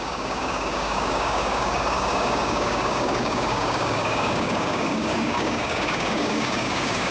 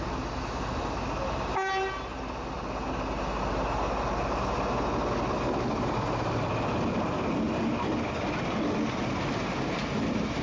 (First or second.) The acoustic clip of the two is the second